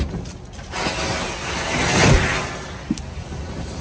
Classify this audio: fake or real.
real